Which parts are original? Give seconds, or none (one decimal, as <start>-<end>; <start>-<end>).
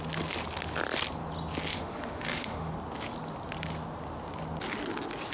0.0-1.7; 2.7-5.3